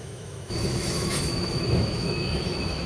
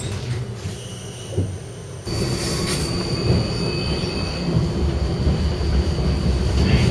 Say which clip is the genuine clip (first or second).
second